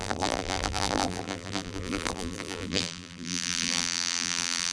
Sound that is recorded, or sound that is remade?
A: remade